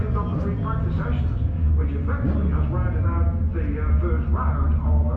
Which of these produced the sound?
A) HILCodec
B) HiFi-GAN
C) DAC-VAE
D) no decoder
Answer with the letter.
D